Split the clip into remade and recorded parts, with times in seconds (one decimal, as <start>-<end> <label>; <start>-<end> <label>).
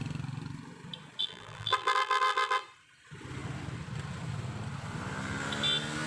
0.0-1.2 recorded; 1.2-2.6 remade; 2.6-6.1 recorded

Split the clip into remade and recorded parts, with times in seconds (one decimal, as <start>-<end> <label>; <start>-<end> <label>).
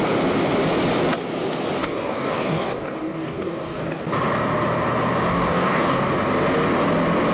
0.0-1.8 recorded; 1.8-4.0 remade; 4.0-5.3 recorded; 5.3-6.1 remade; 6.1-7.3 recorded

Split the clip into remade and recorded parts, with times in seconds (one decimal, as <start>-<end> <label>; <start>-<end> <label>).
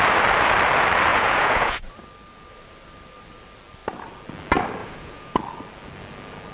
0.0-1.1 recorded; 1.1-1.9 remade; 1.9-4.8 recorded; 4.8-5.4 remade; 5.4-6.5 recorded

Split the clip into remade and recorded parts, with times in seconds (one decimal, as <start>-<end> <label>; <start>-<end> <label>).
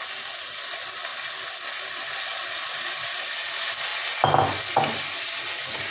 0.0-5.9 recorded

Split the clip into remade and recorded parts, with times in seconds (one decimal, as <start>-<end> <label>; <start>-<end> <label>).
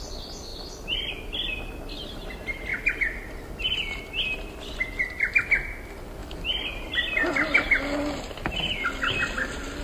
0.0-9.8 recorded